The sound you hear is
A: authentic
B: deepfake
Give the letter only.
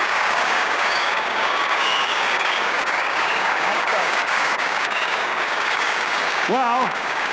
B